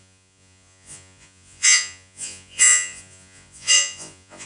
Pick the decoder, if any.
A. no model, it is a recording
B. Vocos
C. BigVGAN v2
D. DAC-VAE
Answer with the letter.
B